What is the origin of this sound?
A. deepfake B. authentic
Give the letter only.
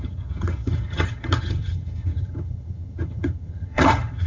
A